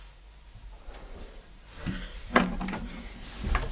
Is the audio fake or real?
fake